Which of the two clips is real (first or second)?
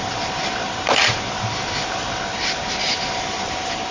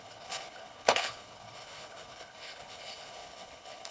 first